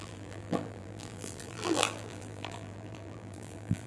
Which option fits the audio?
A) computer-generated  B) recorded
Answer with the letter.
A